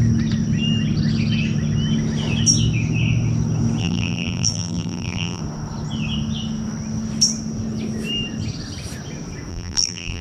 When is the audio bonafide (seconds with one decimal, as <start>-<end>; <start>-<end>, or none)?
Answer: 0.0-3.8; 5.4-9.5